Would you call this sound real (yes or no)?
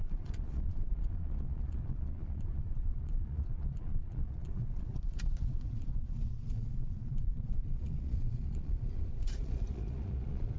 no